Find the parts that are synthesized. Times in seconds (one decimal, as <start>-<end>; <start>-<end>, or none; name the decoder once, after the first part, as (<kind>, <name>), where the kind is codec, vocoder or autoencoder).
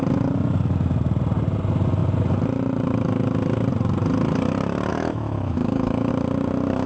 4.9-6.1 (autoencoder, DAC-VAE)